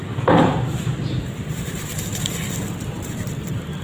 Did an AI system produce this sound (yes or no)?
no